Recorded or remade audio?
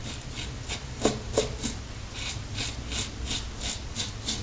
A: recorded